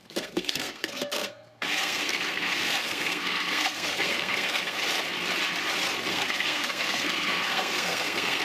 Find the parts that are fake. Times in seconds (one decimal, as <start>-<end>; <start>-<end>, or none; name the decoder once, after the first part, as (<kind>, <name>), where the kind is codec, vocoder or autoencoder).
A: 0.0-4.8 (codec, SNAC); 6.1-8.4